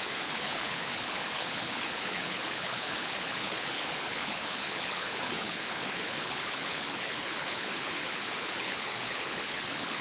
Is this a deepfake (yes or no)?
yes